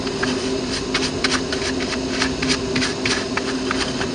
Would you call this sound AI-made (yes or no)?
no